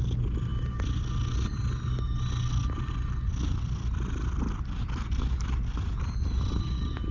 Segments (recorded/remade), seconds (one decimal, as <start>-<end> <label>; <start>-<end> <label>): 0.0-7.1 recorded